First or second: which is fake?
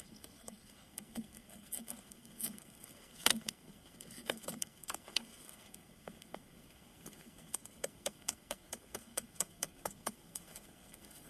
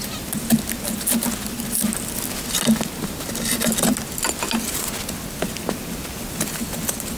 first